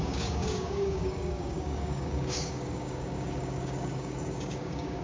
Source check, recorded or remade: remade